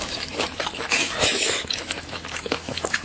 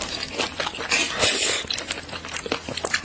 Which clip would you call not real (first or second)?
first